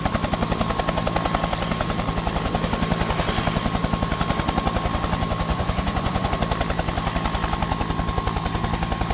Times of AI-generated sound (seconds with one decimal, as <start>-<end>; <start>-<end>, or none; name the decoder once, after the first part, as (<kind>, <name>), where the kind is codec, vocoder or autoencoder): 5.5-6.3 (vocoder, Vocos)